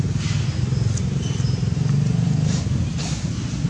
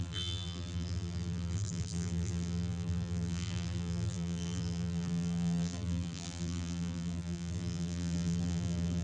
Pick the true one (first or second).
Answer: first